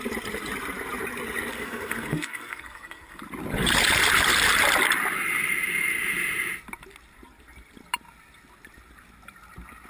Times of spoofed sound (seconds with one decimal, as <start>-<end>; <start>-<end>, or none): 1.5-3.2